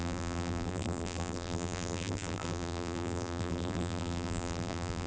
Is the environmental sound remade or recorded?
remade